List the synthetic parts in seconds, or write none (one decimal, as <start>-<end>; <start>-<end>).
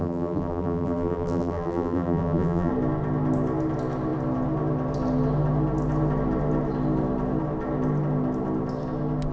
0.0-2.7